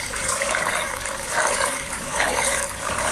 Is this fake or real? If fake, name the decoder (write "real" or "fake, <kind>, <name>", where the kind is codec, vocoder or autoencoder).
fake, codec, DAC